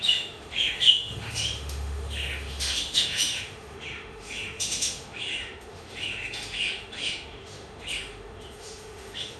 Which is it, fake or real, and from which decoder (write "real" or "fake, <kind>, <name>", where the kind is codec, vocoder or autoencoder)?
fake, autoencoder, DAC-VAE